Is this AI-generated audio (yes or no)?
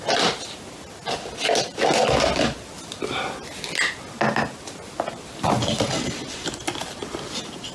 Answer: no